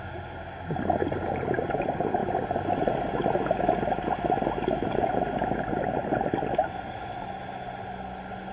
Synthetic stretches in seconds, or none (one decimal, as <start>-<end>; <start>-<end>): none